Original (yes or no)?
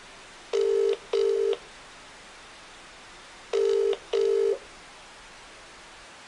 yes